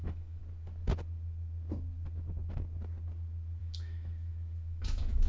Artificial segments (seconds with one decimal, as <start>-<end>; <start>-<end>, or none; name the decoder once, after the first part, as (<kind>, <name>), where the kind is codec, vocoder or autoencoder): 0.0-0.4 (autoencoder, DAC-VAE); 3.6-5.3